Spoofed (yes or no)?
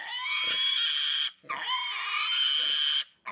no